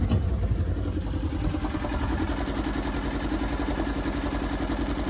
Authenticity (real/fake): real